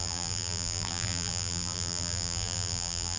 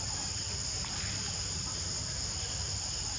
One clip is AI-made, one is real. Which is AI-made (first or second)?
first